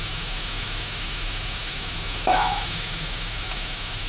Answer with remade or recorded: remade